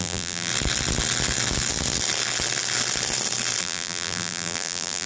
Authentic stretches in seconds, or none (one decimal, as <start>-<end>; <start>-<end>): 0.5-3.6